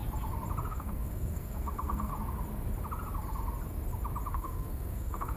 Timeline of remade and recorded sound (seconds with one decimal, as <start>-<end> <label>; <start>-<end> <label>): 0.0-0.7 recorded; 0.7-2.1 remade; 2.1-4.3 recorded; 4.3-5.4 remade